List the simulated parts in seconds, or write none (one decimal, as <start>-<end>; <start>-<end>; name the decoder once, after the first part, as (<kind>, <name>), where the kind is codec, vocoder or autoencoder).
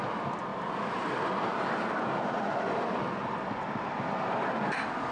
none